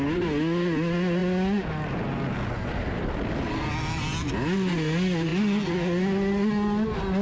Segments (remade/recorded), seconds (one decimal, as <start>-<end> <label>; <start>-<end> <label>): 0.0-7.2 recorded